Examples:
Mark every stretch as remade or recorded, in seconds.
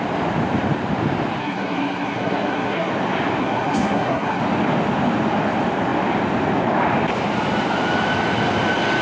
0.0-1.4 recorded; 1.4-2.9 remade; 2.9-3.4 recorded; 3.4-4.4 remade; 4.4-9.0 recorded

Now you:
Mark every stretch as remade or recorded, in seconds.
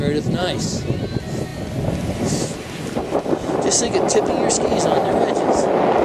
0.0-0.4 recorded; 0.4-1.0 remade; 1.0-1.5 recorded; 1.5-4.3 remade; 4.3-5.0 recorded; 5.0-5.5 remade; 5.5-6.0 recorded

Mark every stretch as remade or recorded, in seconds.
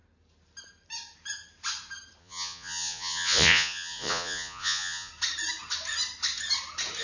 0.0-2.2 recorded; 2.2-5.1 remade; 5.1-7.0 recorded